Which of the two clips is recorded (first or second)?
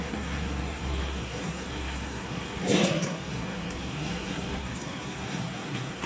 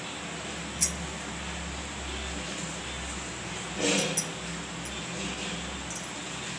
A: second